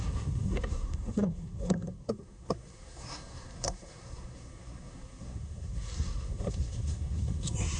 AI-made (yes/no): yes